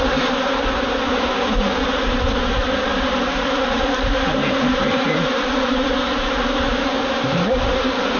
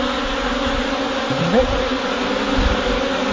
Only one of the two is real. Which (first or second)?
second